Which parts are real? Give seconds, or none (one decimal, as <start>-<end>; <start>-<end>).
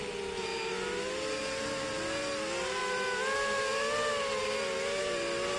0.0-5.6